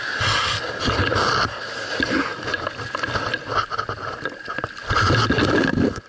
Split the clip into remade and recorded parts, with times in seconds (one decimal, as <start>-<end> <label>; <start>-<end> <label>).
0.0-6.1 recorded